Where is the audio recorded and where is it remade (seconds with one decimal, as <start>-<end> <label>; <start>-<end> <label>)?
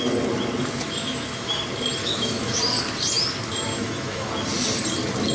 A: 0.0-1.0 recorded; 1.0-1.6 remade; 1.6-2.0 recorded; 2.0-2.6 remade; 2.6-3.7 recorded; 3.7-4.3 remade; 4.3-5.3 recorded